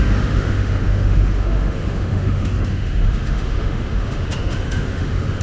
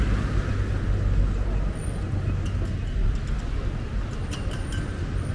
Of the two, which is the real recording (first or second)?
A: second